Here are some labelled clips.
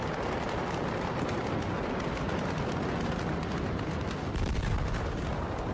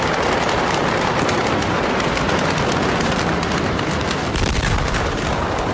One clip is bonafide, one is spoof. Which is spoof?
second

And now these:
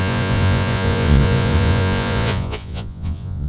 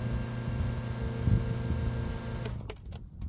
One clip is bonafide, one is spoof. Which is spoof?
first